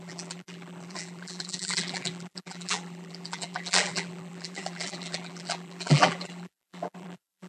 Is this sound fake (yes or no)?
yes